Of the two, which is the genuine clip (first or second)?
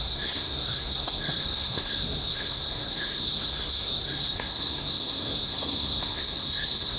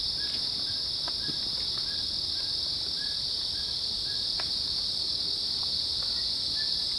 second